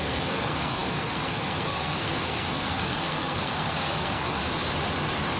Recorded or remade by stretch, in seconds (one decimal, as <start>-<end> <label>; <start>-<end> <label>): 0.0-4.4 remade; 4.4-5.4 recorded